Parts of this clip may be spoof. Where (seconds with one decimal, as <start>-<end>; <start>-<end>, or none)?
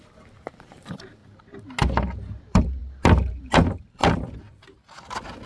0.0-1.2; 2.4-2.8; 3.3-4.0